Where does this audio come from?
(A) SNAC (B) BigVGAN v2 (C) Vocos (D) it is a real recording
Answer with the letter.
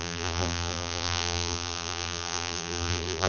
B